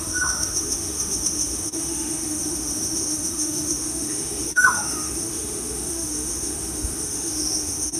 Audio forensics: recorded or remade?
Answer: remade